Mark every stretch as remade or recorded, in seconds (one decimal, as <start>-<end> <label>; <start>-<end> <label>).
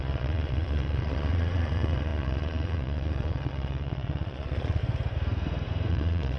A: 0.0-4.8 remade; 4.8-5.9 recorded; 5.9-6.4 remade